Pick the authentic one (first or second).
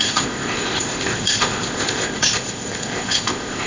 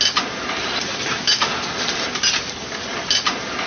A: second